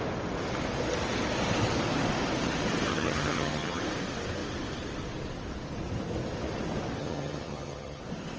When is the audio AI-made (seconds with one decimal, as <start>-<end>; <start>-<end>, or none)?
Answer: 2.9-3.8; 7.0-8.0